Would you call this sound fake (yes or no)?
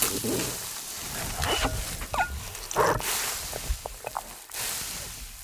no